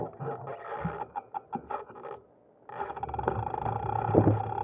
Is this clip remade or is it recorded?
recorded